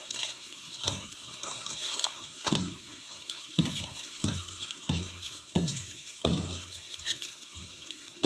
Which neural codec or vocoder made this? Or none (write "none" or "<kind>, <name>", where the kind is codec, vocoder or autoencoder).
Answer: codec, SNAC